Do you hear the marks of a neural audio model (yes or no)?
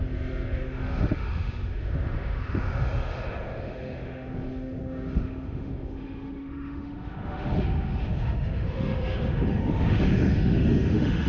yes